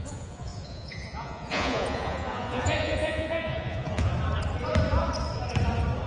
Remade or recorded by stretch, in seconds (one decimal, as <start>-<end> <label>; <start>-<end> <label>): 0.0-4.1 remade; 4.1-6.1 recorded